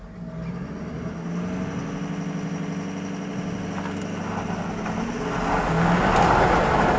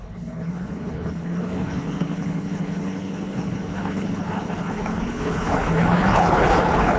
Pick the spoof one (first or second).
second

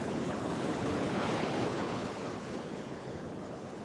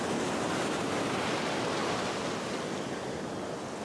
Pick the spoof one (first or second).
first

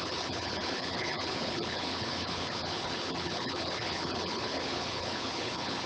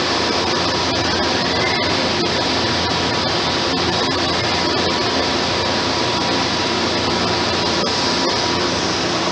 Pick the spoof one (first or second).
first